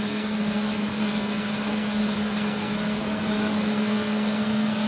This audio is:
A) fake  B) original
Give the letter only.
A